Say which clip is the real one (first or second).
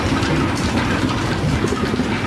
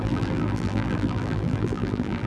first